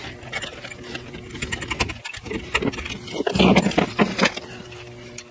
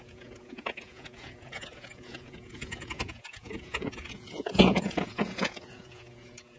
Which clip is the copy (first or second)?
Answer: second